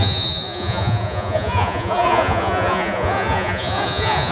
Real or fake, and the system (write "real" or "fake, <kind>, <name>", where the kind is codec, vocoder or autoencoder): fake, vocoder, Vocos